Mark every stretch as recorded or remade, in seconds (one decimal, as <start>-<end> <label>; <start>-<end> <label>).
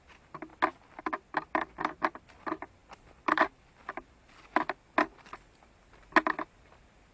0.0-7.1 recorded